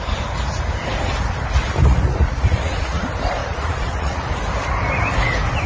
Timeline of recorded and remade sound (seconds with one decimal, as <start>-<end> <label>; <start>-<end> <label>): 0.0-1.8 recorded; 1.8-3.0 remade; 3.0-3.4 recorded; 3.4-4.2 remade; 4.2-5.7 recorded